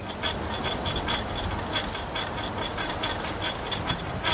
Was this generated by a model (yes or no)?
no